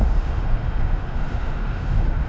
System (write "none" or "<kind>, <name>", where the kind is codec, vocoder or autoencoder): autoencoder, DAC-VAE